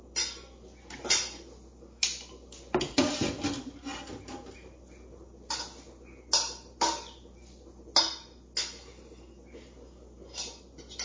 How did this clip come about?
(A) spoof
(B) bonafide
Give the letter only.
B